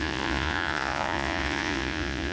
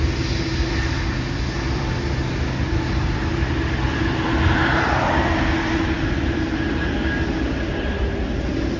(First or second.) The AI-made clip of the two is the first